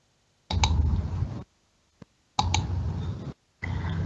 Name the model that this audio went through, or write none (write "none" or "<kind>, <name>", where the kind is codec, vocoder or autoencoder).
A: none